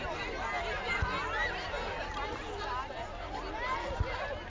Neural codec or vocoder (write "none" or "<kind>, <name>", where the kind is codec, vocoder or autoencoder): none